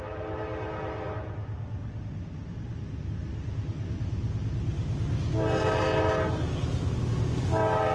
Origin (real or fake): real